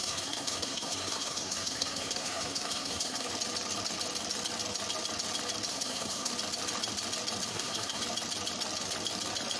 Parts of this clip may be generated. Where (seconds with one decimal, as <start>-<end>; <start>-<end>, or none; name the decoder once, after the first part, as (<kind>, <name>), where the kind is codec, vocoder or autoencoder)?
0.0-3.3 (codec, SNAC); 5.7-6.3; 7.5-8.0